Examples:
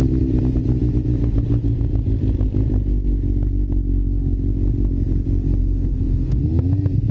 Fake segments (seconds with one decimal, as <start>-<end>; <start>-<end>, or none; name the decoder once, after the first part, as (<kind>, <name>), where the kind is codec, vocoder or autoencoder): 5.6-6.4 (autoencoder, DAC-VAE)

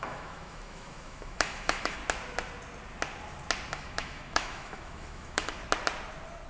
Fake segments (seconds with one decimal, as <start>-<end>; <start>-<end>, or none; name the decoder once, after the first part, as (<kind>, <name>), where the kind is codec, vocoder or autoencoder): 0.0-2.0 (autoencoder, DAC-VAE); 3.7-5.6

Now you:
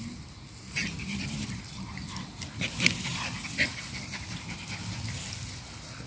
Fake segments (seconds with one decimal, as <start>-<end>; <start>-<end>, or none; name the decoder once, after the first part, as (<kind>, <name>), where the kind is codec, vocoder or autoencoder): 0.8-1.9 (vocoder, BigVGAN v2); 3.1-5.3

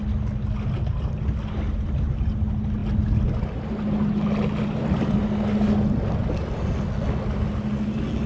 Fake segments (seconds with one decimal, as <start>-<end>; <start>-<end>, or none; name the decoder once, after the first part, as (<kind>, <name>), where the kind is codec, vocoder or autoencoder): none